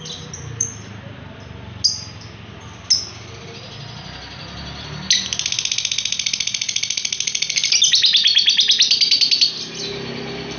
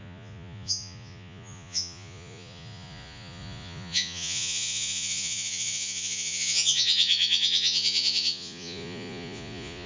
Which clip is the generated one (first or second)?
second